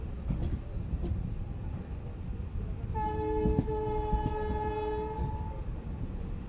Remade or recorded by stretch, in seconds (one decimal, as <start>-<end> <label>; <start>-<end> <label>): 0.0-6.5 recorded